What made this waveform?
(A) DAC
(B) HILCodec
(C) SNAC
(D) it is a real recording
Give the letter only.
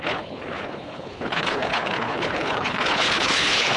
B